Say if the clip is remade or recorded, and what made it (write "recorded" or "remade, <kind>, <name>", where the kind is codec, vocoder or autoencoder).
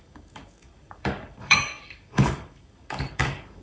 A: remade, codec, DAC